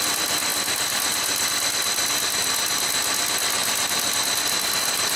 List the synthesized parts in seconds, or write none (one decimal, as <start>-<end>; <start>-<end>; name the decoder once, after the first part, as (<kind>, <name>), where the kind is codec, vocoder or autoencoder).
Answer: none